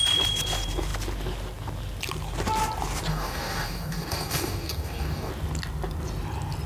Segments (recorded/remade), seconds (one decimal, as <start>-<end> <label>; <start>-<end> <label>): 0.0-3.1 recorded; 3.1-5.3 remade; 5.3-6.7 recorded